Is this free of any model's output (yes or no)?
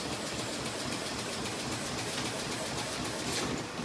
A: yes